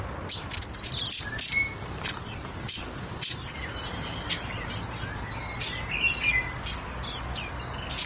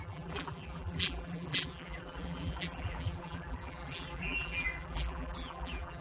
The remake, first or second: second